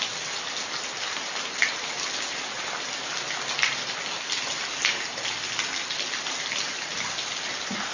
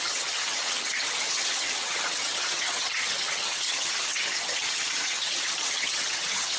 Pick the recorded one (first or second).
first